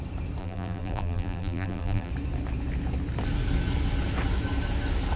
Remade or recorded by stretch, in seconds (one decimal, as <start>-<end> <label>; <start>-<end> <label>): 0.0-0.4 recorded; 0.4-2.1 remade; 2.1-5.2 recorded